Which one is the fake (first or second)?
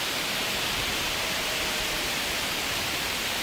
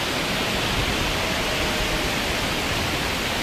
first